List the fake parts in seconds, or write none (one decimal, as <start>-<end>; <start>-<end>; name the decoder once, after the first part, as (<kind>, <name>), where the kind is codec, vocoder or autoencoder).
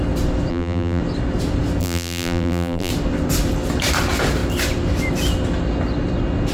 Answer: 0.5-1.0 (vocoder, BigVGAN v2); 1.8-2.9